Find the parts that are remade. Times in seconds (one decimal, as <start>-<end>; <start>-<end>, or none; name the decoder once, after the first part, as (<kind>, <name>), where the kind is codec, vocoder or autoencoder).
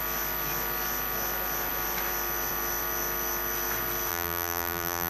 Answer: 4.1-5.1 (vocoder, BigVGAN v2)